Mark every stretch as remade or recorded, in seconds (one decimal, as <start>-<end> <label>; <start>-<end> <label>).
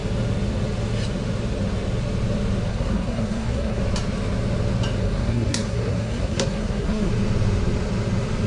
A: 0.0-2.7 recorded; 2.7-3.8 remade; 3.8-5.0 recorded; 5.0-7.1 remade; 7.1-8.5 recorded